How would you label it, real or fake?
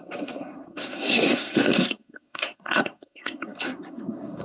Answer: fake